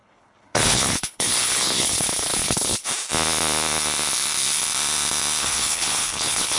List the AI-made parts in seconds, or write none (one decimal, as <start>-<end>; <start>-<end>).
0.0-2.9; 5.4-6.6